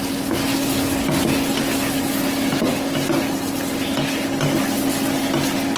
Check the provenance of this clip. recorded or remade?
recorded